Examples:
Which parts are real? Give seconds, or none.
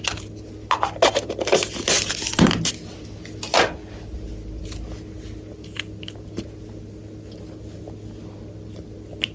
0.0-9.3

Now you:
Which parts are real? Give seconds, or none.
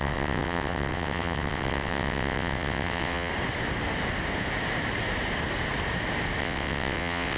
3.3-6.4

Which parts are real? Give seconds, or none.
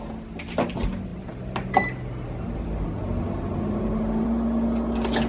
0.0-5.3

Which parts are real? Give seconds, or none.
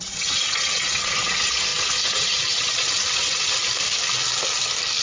3.6-5.0